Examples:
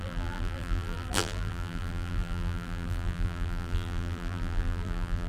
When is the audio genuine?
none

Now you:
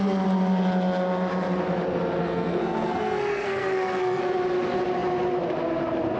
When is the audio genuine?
0.0-2.2; 4.2-6.2